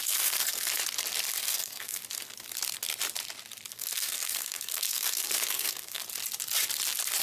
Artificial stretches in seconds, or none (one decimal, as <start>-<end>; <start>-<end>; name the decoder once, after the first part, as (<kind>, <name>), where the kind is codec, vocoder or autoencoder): 0.0-0.8 (codec, SNAC); 1.4-2.0; 3.7-6.0